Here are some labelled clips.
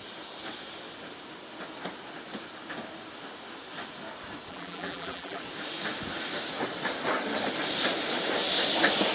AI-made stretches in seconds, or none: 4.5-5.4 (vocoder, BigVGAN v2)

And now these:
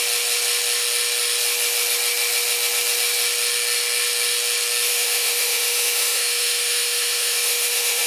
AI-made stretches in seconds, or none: 4.9-8.1 (autoencoder, DAC-VAE)

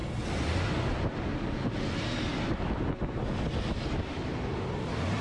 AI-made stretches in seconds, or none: none

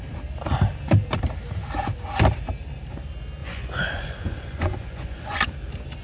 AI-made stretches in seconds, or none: 3.4-5.4 (vocoder, Vocos)

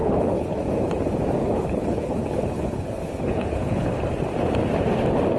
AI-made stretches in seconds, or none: 0.0-0.6 (codec, HILCodec); 1.4-4.1

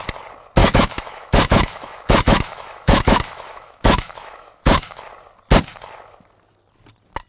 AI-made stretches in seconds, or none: 0.6-5.0 (autoencoder, DAC-VAE)